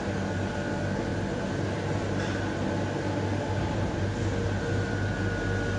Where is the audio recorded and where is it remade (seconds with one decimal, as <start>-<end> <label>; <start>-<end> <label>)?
0.0-5.8 recorded